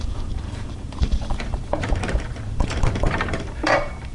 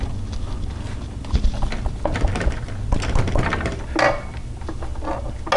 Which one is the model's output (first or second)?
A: first